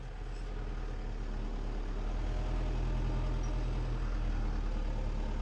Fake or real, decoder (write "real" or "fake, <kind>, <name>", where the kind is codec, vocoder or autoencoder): real